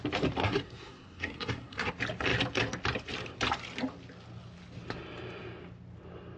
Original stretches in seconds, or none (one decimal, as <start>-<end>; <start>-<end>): 0.0-0.4; 1.9-6.4